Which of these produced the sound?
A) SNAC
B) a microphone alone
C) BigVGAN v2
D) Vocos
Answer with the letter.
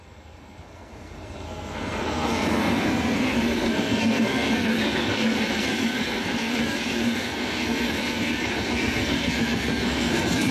A